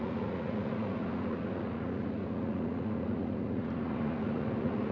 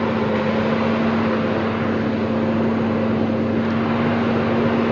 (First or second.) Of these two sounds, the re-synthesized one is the first